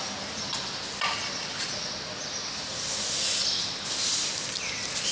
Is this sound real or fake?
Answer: real